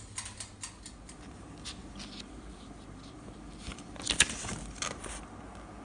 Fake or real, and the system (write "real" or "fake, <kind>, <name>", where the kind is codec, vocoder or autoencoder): real